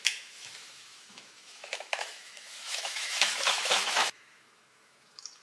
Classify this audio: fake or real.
fake